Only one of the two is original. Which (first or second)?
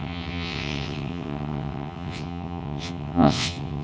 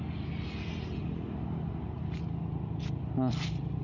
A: second